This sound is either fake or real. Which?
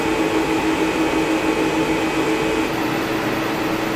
real